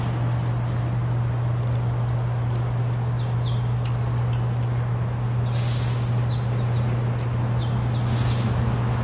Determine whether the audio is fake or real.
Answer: real